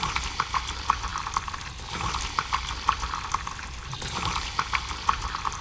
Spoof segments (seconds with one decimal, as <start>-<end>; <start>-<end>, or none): none

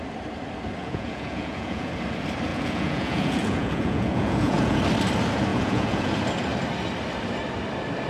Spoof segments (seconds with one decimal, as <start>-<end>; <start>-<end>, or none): 0.8-1.9; 2.5-4.8; 5.5-6.1

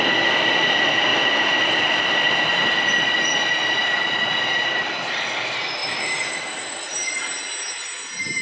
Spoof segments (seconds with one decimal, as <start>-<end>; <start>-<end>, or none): 1.1-4.9; 5.8-7.1